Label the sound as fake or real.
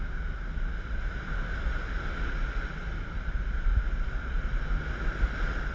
real